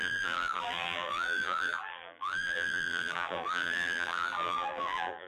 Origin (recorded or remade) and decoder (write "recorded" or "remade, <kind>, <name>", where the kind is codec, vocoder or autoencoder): remade, vocoder, BigVGAN v2